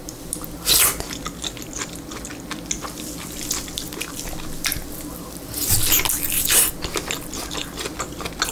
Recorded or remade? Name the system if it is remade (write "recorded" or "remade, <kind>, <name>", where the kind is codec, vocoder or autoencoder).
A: recorded